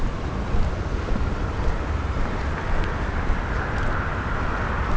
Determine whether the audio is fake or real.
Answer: real